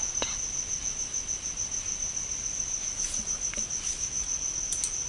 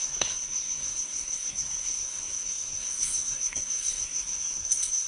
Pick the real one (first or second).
first